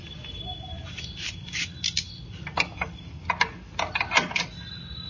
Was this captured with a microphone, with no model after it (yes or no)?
yes